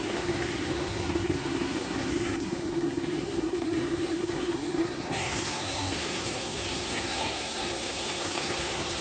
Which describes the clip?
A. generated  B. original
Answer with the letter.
A